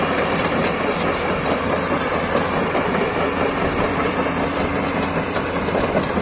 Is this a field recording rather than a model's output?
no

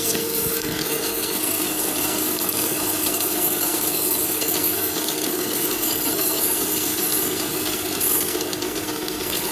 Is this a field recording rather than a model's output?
no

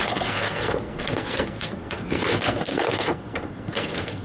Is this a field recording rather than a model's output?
no